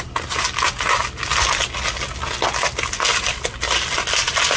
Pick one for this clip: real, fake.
real